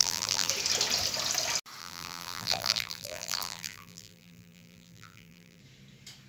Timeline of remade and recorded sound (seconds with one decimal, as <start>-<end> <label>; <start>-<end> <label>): 0.0-0.5 remade; 0.5-1.8 recorded; 1.8-5.6 remade; 5.6-6.3 recorded